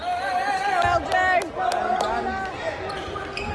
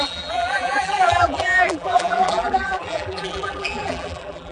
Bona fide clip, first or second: first